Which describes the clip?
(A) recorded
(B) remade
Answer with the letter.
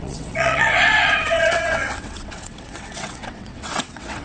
B